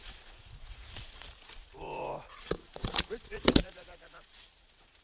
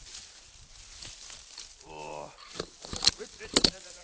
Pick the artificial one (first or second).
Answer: first